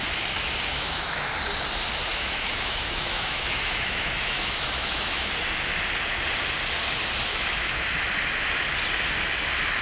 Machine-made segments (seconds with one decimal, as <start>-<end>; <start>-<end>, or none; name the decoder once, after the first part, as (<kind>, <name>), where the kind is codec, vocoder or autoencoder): 0.7-1.3 (autoencoder, DAC-VAE); 2.1-5.3; 7.3-7.8